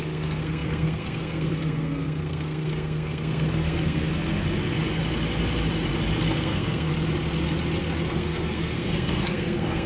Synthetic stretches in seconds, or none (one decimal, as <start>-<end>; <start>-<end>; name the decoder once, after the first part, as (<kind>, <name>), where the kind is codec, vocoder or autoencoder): 0.0-4.1 (codec, SNAC); 6.2-6.9; 8.1-9.9